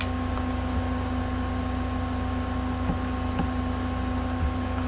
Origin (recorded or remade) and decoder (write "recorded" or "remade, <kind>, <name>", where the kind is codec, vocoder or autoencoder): recorded